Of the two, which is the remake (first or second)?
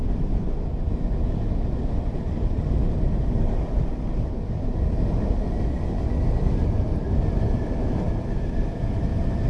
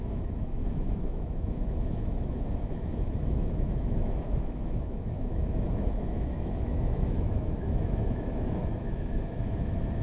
second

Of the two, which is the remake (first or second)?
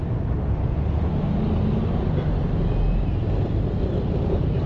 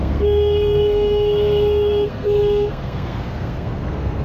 second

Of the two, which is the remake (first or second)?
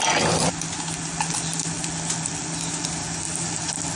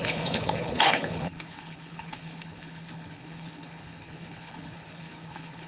second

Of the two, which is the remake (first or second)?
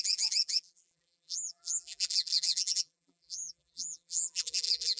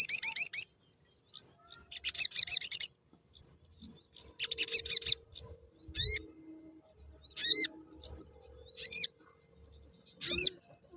first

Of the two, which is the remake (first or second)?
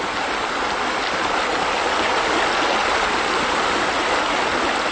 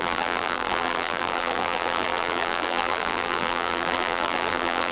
second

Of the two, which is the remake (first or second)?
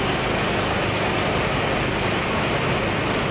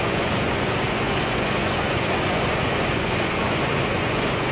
second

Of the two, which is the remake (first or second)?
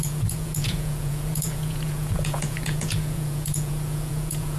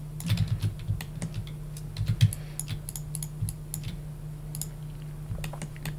first